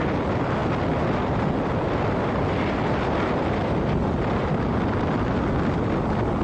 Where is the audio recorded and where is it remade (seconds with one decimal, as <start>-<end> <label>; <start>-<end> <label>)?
0.0-6.4 recorded

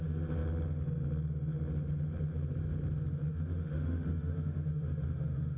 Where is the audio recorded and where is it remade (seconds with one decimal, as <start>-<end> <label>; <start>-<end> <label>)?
0.0-3.3 recorded; 3.3-5.6 remade

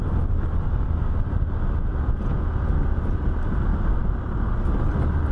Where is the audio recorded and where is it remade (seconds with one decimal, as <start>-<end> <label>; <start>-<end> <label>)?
0.0-1.9 recorded; 1.9-2.6 remade; 2.6-5.3 recorded